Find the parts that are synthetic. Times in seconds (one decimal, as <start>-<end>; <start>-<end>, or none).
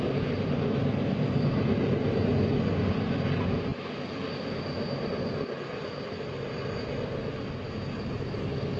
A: none